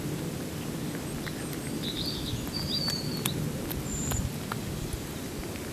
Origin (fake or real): real